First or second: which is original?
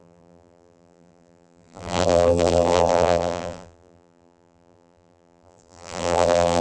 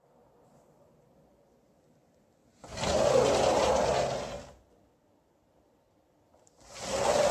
second